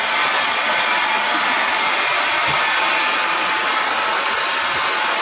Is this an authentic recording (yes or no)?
yes